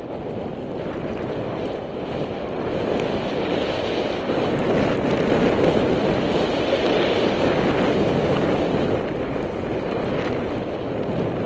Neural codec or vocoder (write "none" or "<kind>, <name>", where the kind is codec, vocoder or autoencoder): none